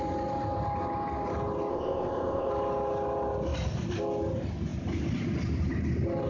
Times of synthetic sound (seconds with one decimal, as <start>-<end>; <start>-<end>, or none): 1.7-2.5